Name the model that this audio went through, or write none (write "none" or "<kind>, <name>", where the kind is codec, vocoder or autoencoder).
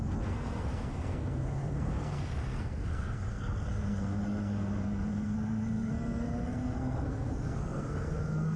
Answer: codec, SNAC